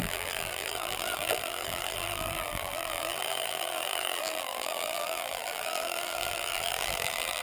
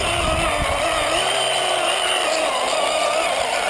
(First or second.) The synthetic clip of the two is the first